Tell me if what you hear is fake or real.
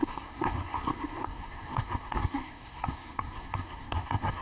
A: fake